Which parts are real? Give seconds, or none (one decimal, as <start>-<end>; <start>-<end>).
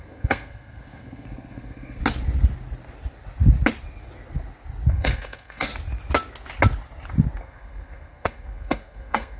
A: 2.0-4.9; 5.7-7.4